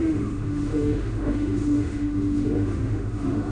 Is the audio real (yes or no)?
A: no